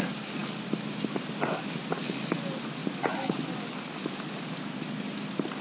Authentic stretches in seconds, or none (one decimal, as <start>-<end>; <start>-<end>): 0.0-5.6